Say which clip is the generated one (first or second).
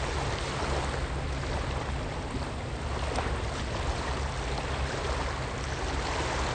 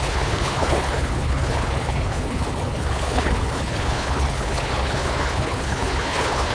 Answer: second